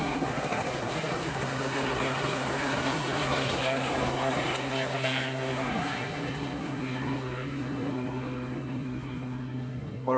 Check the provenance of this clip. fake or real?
fake